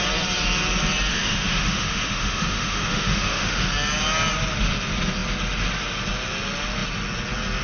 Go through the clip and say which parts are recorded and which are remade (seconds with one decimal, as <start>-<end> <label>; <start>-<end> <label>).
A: 0.0-1.1 recorded; 1.1-3.7 remade; 3.7-7.6 recorded